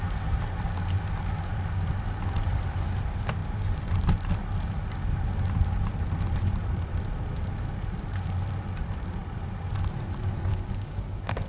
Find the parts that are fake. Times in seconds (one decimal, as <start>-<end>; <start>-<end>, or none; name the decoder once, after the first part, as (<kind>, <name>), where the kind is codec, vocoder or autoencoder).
10.5-11.5 (codec, DAC)